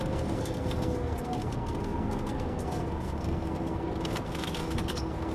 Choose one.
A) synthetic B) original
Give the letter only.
A